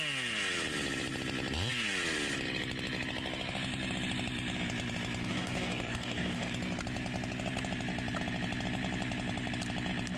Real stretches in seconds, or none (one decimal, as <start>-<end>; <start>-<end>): 0.0-5.2; 6.5-10.2